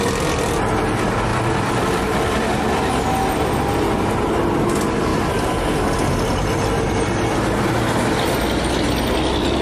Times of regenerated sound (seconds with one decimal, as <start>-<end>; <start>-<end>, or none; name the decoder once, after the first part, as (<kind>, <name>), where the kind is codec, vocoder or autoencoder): 1.3-2.8 (vocoder, BigVGAN v2)